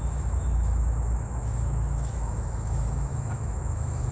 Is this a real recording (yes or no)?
no